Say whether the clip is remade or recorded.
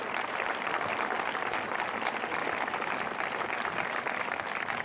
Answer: recorded